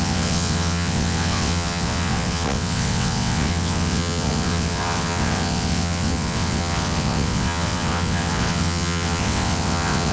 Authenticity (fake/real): fake